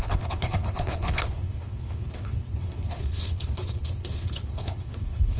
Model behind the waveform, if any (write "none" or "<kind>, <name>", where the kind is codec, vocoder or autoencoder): codec, HILCodec